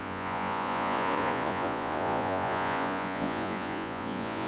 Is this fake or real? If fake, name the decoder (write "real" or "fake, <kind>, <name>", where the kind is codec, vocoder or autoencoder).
fake, vocoder, Vocos